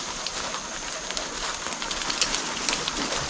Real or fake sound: real